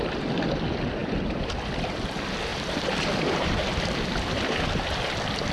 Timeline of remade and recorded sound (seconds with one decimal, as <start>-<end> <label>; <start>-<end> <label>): 0.0-1.0 recorded; 1.0-1.9 remade; 1.9-2.5 recorded; 2.5-4.1 remade; 4.1-5.5 recorded